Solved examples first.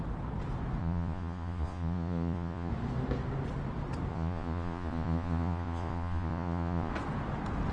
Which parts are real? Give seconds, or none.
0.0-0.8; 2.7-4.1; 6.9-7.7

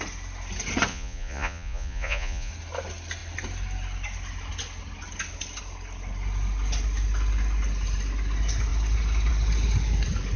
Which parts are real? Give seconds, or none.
0.0-0.9; 2.5-10.4

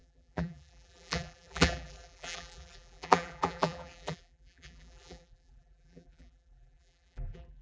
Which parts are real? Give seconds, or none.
none

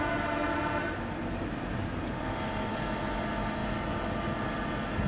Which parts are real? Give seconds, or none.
0.0-5.1

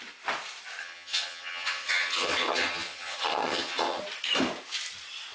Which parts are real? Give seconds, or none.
0.0-0.8; 4.0-5.3

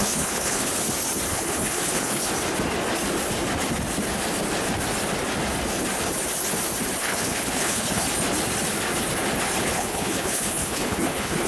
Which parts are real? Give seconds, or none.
0.7-1.3; 2.2-7.0; 8.0-9.6

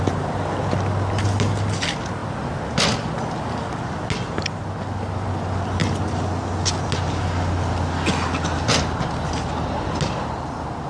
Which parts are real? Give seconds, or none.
0.0-10.9

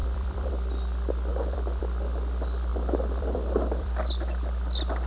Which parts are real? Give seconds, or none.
0.5-1.3; 1.8-2.7; 4.1-5.1